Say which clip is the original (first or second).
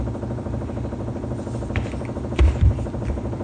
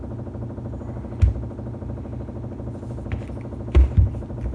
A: second